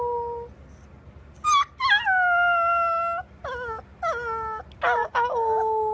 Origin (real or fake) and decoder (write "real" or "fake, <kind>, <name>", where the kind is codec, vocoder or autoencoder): real